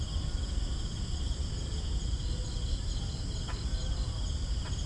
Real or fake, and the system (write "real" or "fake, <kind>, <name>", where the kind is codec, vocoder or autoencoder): real